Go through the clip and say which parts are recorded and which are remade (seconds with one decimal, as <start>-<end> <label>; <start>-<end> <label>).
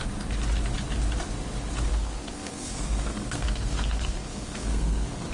0.0-1.9 recorded; 1.9-5.3 remade